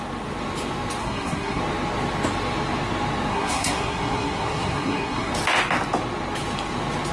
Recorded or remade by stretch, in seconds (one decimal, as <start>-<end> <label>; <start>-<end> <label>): 0.0-1.0 recorded; 1.0-1.6 remade; 1.6-3.3 recorded; 3.3-5.3 remade; 5.3-7.1 recorded